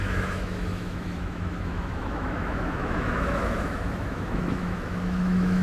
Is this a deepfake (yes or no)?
yes